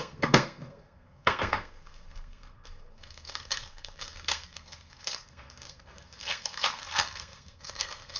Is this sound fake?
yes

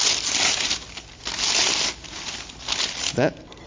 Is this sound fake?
no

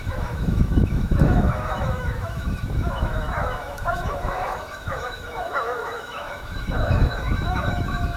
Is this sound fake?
yes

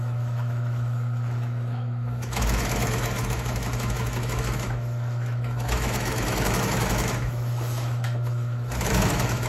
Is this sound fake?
yes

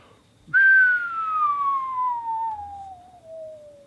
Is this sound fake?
no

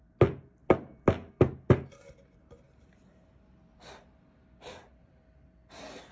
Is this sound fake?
no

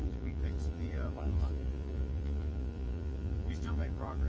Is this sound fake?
yes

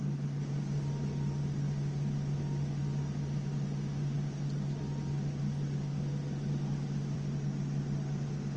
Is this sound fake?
no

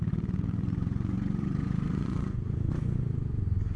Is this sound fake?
yes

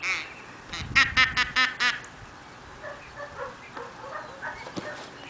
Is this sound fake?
no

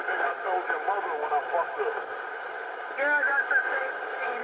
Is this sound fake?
yes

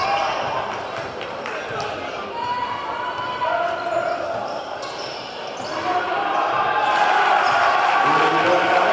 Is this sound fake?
no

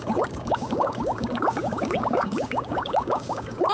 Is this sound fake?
yes